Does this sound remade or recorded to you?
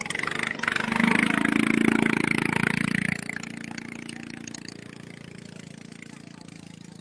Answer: recorded